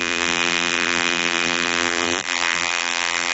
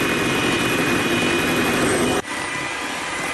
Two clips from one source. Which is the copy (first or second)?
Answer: first